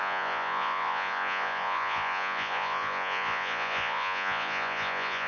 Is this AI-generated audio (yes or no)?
yes